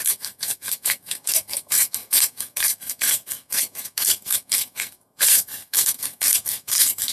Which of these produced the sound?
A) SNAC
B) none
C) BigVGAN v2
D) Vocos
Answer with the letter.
A